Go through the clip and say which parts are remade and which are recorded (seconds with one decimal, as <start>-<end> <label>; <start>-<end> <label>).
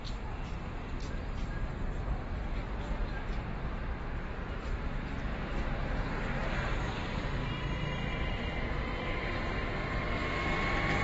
0.0-11.0 recorded